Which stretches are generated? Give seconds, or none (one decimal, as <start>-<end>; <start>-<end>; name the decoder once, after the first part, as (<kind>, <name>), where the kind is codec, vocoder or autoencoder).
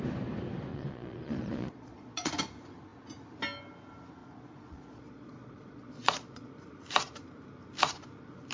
0.7-2.3 (vocoder, Vocos); 4.2-6.5